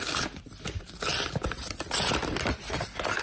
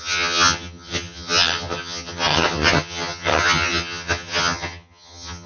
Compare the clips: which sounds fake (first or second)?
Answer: second